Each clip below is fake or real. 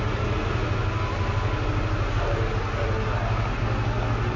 real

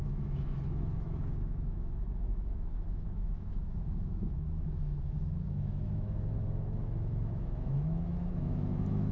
fake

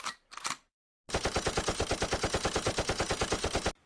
real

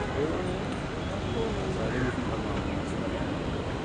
real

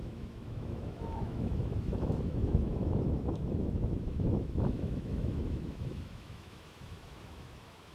fake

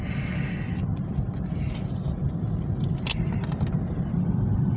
real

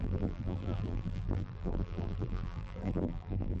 fake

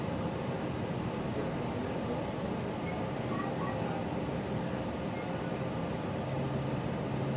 real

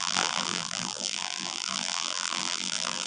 fake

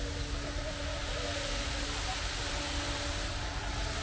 real